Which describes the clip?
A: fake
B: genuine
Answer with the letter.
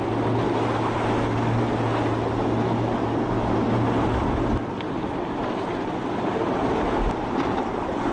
B